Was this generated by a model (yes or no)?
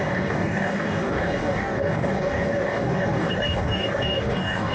yes